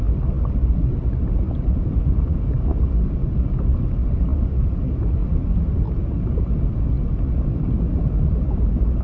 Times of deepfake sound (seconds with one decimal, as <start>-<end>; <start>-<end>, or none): none